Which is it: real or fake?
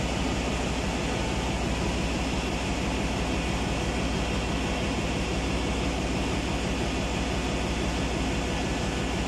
real